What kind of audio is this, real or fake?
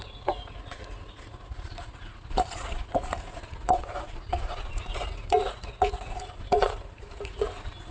fake